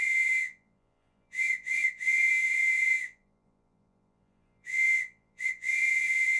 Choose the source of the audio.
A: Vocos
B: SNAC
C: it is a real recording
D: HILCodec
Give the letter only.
A